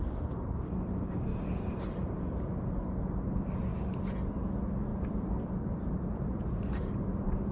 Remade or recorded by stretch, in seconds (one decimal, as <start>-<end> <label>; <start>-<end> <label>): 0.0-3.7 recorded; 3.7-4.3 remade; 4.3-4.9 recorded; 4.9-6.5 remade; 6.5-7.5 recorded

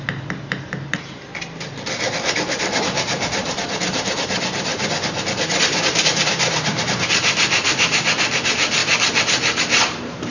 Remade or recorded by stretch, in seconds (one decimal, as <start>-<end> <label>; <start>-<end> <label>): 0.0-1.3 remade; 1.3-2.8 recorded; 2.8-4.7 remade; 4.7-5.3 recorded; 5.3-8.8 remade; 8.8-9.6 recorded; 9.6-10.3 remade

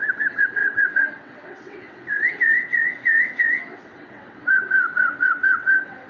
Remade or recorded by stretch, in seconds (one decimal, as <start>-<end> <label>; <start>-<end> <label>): 0.0-6.1 remade

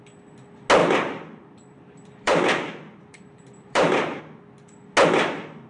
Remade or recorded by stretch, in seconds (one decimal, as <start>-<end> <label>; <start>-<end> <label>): 0.0-0.8 recorded; 0.8-4.2 remade; 4.2-5.7 recorded

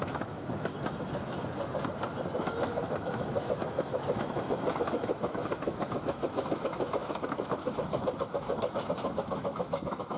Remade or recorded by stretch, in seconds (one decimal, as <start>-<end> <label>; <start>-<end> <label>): 0.0-0.7 remade; 0.7-2.6 recorded; 2.6-10.2 remade

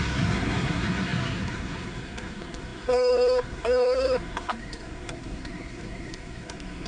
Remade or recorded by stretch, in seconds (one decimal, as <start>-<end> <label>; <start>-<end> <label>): 0.0-6.9 remade

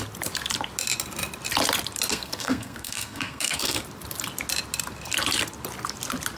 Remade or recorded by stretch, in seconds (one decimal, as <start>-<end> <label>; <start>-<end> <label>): 0.0-2.1 recorded; 2.1-3.8 remade; 3.8-6.4 recorded

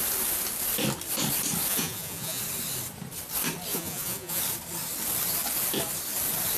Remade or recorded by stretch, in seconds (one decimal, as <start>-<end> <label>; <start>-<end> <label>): 0.0-1.7 recorded; 1.7-2.4 remade; 2.4-3.7 recorded; 3.7-4.4 remade; 4.4-6.6 recorded